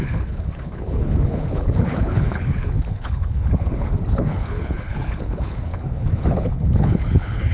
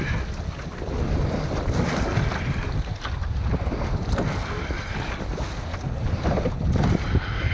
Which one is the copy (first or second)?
first